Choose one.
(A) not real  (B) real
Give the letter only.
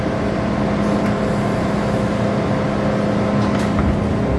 B